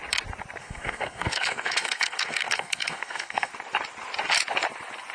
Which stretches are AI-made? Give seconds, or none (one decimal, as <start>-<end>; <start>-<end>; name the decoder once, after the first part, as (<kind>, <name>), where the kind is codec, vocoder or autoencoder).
0.6-3.5 (codec, SNAC)